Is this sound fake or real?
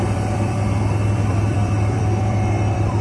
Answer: fake